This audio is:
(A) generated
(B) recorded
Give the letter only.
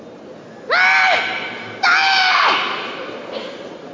B